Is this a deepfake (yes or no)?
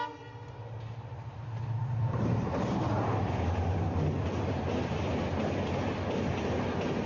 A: no